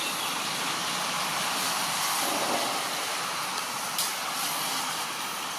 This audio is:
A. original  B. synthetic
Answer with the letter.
A